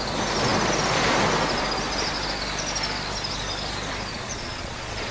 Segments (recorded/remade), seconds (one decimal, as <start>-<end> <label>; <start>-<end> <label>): 0.0-4.1 recorded; 4.1-5.1 remade